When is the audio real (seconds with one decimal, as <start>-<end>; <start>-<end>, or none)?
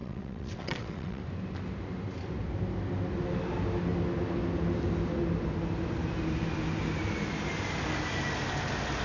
1.2-9.0